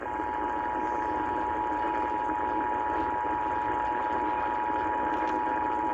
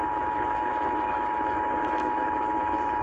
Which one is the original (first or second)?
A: first